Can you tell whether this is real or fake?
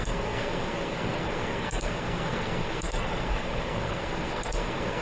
fake